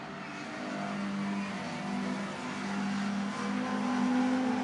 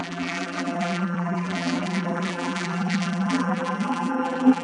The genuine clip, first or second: first